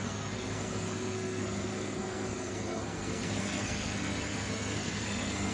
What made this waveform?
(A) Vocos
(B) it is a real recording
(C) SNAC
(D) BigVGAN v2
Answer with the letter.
C